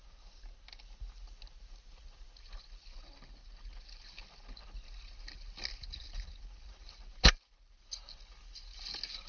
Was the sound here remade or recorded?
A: recorded